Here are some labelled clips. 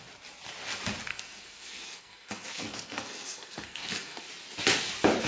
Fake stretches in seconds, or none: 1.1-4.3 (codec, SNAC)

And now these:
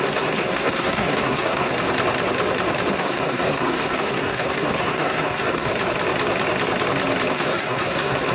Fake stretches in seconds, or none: 0.0-1.7 (codec, SNAC); 2.9-5.7; 7.3-8.3

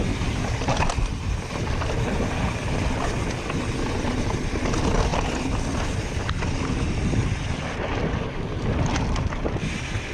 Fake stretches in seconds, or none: none

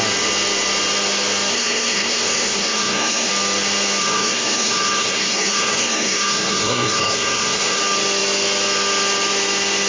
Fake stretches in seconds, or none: 1.5-3.3 (codec, SNAC); 4.0-7.8

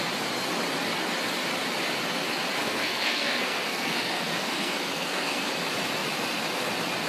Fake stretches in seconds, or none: 2.6-5.5 (codec, SNAC)

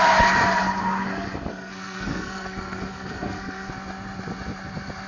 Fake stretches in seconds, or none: 1.5-3.7 (codec, SNAC)

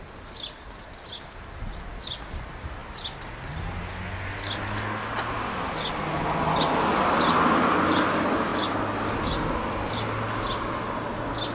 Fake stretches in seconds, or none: none